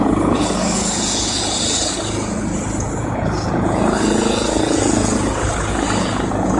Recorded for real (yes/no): no